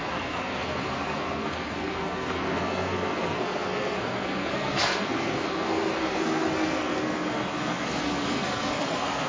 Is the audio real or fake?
fake